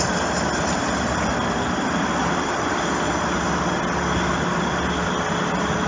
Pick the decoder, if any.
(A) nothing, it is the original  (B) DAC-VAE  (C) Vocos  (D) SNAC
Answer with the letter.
A